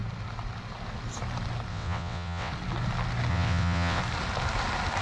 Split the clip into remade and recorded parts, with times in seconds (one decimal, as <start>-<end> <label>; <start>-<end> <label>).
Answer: 0.0-1.7 recorded; 1.7-2.5 remade; 2.5-3.3 recorded; 3.3-4.0 remade; 4.0-5.0 recorded